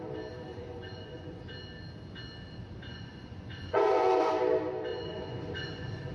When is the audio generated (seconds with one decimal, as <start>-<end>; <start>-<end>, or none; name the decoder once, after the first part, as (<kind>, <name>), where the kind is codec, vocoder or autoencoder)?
0.5-1.4 (vocoder, Vocos); 2.9-4.3; 4.9-6.1